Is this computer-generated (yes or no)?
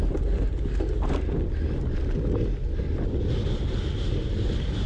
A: no